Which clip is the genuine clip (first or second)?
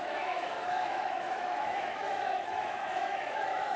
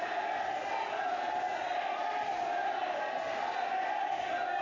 second